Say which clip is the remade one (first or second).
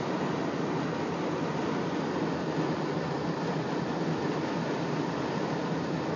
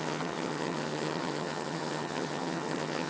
second